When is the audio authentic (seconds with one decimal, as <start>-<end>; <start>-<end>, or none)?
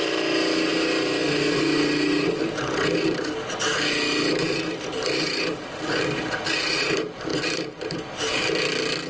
0.0-7.3; 8.1-9.1